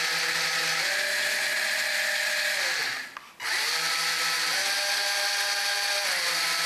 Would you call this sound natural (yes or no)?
yes